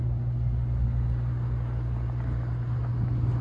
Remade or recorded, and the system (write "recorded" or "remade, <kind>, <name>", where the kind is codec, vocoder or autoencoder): recorded